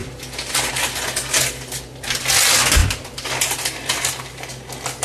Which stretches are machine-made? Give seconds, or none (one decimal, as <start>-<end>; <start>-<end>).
0.0-0.7